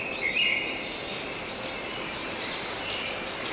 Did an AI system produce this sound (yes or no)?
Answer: no